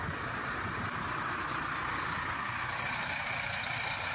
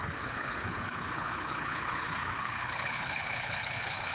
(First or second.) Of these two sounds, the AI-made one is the second